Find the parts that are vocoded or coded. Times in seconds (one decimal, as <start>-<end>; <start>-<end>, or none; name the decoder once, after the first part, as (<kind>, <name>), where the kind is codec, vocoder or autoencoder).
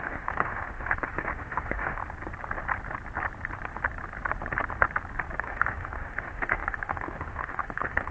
0.0-2.0 (autoencoder, DAC-VAE); 5.4-8.1